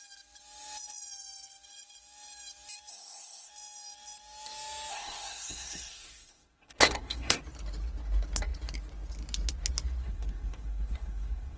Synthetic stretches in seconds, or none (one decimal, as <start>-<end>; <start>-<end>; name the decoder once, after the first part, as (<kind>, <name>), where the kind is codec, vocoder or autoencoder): 2.9-3.5 (codec, SNAC); 4.9-7.4; 10.0-11.6